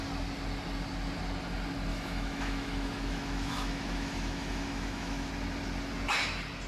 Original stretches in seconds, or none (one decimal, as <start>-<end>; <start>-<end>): 0.0-1.9; 5.3-6.7